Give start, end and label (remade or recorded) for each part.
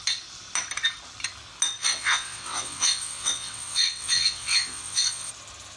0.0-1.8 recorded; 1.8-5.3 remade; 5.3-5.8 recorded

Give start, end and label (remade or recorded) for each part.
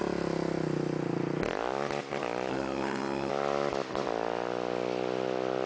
0.0-2.5 recorded; 2.5-3.3 remade; 3.3-5.7 recorded